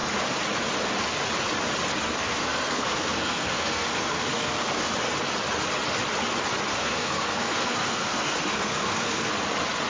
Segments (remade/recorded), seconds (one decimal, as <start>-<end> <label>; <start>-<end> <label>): 0.0-2.2 recorded; 2.2-4.9 remade; 4.9-6.7 recorded; 6.7-9.3 remade; 9.3-9.9 recorded